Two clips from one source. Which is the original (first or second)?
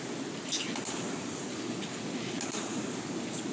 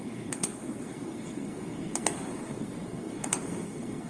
first